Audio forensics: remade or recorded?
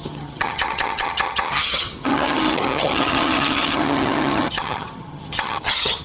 remade